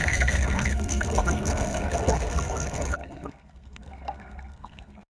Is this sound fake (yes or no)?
yes